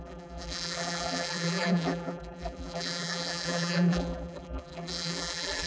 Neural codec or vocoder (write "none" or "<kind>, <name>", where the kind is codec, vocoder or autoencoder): vocoder, BigVGAN v2